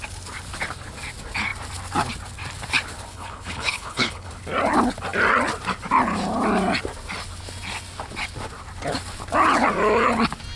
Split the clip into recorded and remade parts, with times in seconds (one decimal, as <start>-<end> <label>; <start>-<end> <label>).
0.0-3.1 recorded; 3.1-4.3 remade; 4.3-10.6 recorded